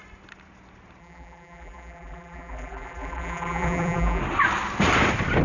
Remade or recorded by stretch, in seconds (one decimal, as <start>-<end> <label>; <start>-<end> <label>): 0.0-1.0 recorded; 1.0-4.2 remade; 4.2-5.4 recorded